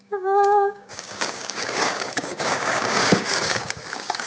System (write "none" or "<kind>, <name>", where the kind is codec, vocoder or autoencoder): codec, DAC